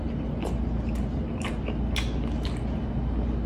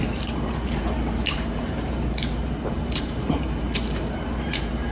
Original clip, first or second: first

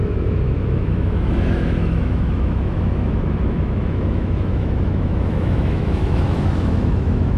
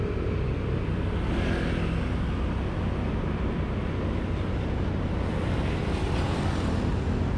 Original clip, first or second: second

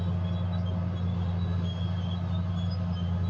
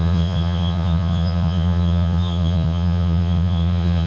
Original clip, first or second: first